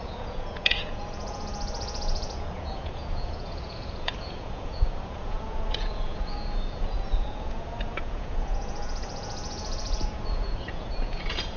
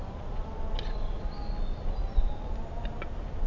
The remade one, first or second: first